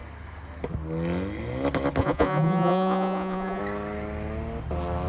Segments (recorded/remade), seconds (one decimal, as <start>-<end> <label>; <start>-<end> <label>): 0.0-2.0 recorded; 2.0-3.6 remade; 3.6-5.1 recorded